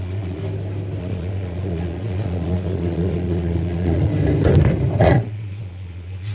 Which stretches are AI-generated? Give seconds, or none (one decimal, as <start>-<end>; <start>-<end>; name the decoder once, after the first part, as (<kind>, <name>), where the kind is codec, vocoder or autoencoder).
0.0-0.4 (vocoder, Vocos); 1.0-4.1; 5.0-6.3

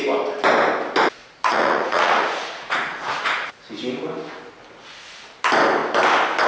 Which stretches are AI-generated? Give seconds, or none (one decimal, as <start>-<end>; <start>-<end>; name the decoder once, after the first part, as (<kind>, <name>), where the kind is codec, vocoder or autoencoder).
1.2-3.7 (vocoder, Vocos)

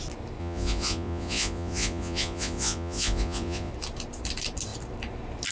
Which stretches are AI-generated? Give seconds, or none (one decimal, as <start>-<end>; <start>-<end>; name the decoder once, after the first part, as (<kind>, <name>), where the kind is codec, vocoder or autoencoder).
0.4-3.7 (vocoder, Vocos)